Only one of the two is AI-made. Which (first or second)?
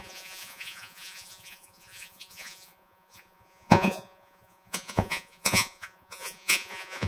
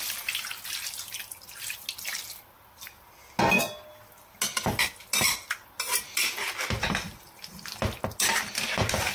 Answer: first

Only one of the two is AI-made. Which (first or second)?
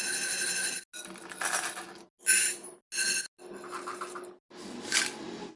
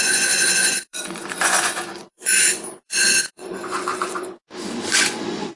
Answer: second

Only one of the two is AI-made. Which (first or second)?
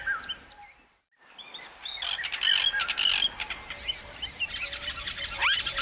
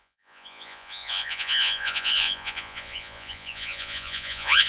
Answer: second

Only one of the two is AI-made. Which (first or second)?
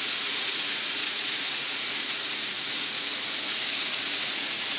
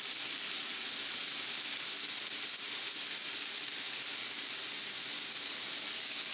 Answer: first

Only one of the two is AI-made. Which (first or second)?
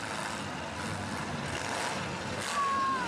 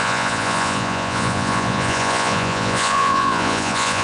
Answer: second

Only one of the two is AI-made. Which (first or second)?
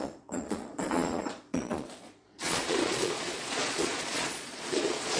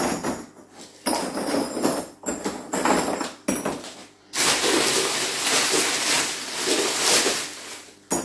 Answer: first